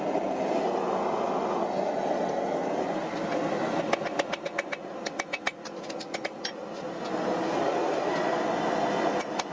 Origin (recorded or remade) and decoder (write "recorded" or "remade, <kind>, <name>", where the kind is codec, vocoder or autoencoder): recorded